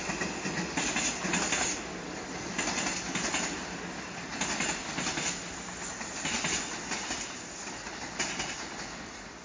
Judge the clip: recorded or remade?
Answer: recorded